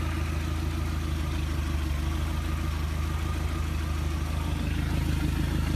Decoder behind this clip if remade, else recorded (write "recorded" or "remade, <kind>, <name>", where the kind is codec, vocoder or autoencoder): recorded